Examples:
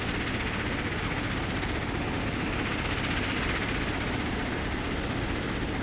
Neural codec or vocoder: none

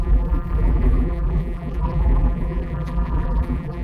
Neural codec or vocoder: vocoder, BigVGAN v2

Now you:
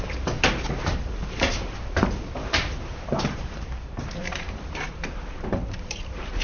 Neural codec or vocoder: vocoder, BigVGAN v2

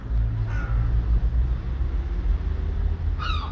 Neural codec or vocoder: none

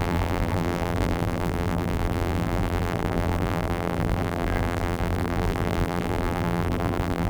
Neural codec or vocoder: vocoder, BigVGAN v2